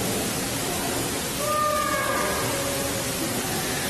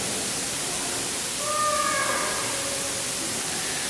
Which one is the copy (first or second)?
second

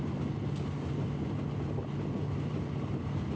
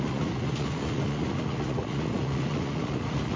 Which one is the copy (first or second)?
second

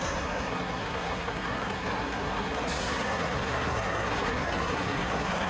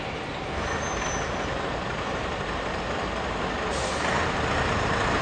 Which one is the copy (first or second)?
first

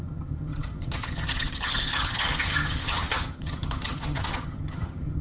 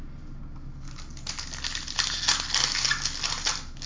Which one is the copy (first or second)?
first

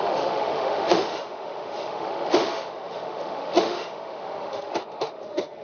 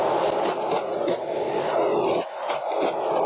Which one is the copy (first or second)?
first